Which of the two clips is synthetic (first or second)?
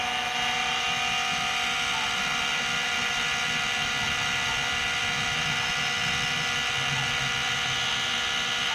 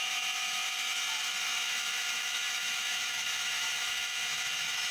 second